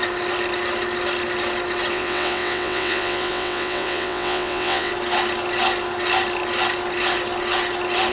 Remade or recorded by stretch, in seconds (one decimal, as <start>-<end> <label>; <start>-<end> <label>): 0.0-1.9 recorded; 1.9-4.9 remade; 4.9-8.1 recorded